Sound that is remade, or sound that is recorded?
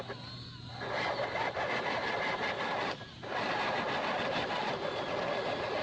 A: recorded